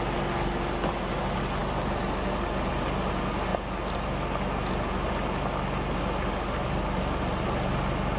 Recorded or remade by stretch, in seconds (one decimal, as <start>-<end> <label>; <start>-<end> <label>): 0.0-8.2 recorded